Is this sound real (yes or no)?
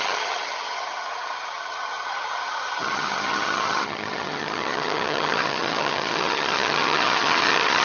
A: no